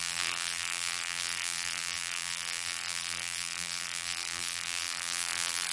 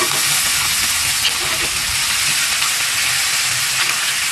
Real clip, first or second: second